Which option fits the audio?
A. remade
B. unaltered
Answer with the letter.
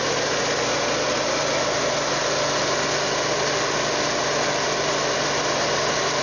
B